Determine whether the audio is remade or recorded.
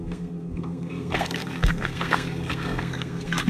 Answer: remade